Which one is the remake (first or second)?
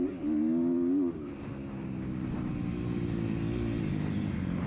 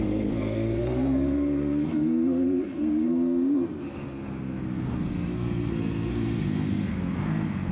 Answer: second